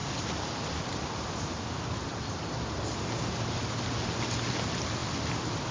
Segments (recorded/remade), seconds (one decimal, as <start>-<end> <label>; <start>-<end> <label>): 0.0-5.7 recorded